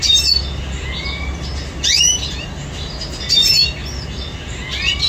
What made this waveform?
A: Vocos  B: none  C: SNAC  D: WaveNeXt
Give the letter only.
B